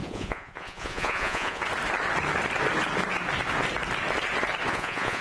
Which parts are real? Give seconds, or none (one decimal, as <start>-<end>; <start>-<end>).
1.6-4.7